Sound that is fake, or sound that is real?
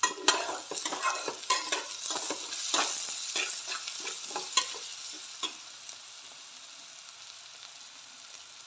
real